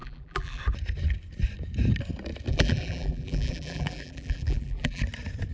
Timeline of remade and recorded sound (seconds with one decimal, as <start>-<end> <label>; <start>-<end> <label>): 0.0-0.6 remade; 0.6-2.5 recorded; 2.5-5.0 remade; 5.0-5.5 recorded